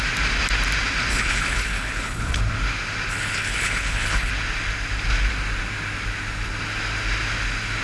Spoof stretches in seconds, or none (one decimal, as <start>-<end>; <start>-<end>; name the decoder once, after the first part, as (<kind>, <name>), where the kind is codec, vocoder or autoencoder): 1.1-2.4 (codec, HILCodec); 3.1-4.3